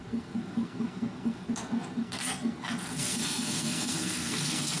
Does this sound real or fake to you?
fake